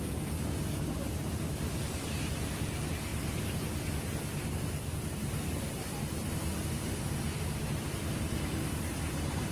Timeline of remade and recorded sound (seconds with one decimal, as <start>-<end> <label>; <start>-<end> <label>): 0.0-9.5 recorded